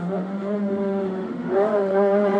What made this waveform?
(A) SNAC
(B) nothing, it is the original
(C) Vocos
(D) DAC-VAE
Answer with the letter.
D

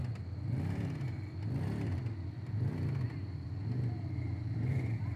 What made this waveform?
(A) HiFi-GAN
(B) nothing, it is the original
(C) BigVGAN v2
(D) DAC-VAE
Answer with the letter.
B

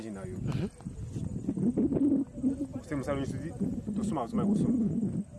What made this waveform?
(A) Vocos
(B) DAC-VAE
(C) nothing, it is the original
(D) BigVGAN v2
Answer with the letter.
C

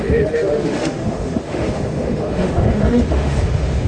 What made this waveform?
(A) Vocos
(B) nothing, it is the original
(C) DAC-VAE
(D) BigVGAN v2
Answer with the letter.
C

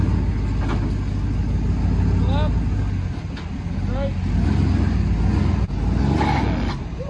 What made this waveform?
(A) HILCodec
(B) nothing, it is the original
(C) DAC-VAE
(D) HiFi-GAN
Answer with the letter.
B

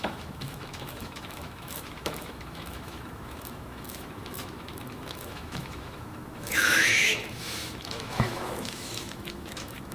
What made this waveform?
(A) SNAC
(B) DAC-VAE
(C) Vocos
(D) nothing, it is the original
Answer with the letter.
B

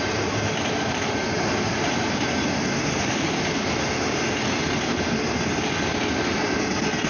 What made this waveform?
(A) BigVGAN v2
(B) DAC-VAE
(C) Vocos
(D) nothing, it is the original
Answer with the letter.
D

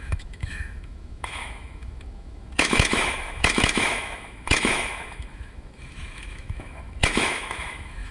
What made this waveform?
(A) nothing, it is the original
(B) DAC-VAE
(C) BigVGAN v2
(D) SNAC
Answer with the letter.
B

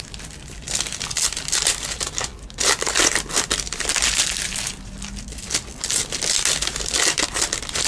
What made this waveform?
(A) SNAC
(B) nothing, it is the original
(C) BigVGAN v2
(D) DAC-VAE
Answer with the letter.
B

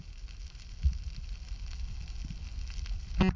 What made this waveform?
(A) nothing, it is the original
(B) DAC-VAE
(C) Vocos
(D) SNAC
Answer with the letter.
A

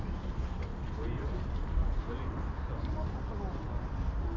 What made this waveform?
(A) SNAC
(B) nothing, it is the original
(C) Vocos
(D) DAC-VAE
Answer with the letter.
B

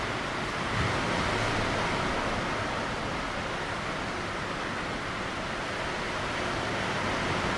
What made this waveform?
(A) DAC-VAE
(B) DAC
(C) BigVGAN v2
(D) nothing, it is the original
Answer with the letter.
D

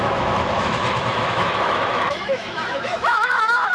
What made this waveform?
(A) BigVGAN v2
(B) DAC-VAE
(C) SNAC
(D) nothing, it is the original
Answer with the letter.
B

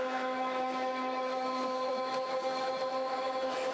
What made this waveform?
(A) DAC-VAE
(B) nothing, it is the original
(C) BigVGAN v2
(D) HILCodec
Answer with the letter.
A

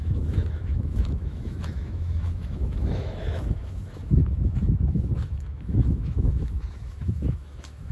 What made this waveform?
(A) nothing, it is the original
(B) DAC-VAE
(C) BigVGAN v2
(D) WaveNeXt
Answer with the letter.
B